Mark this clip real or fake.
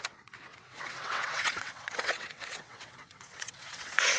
fake